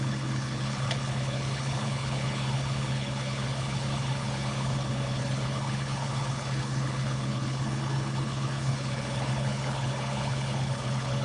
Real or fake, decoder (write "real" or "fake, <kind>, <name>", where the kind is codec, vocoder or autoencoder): fake, codec, HILCodec